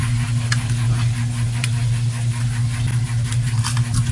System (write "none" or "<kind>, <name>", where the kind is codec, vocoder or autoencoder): none